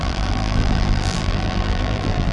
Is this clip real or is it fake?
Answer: fake